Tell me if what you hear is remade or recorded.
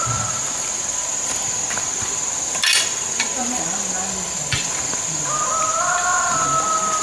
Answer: recorded